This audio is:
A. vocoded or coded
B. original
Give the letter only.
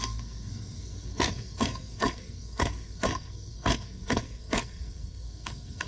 A